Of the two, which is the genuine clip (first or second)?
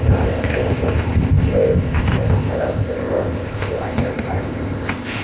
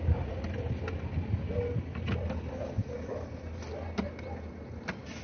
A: second